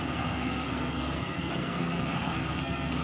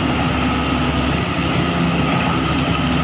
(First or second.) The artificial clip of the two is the first